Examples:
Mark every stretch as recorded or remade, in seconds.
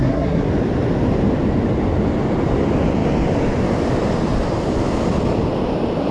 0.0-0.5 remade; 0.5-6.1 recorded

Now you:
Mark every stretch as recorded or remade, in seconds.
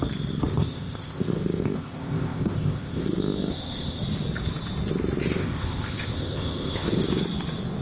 0.0-0.5 recorded; 0.5-4.0 remade; 4.0-5.3 recorded; 5.3-7.0 remade; 7.0-7.8 recorded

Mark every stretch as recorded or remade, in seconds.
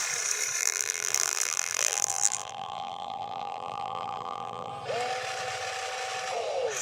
0.0-0.6 recorded; 0.6-4.7 remade; 4.7-6.8 recorded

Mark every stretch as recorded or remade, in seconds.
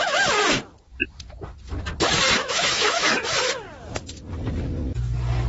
0.0-2.4 recorded; 2.4-3.3 remade; 3.3-5.5 recorded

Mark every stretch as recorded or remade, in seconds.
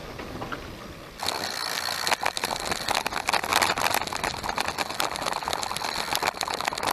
0.0-3.5 recorded; 3.5-5.8 remade; 5.8-6.9 recorded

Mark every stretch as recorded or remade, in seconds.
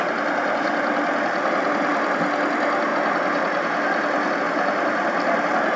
0.0-5.8 recorded